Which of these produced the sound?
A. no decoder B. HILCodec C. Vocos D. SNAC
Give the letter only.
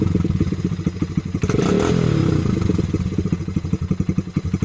A